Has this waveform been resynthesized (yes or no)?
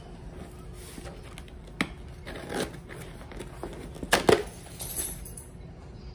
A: no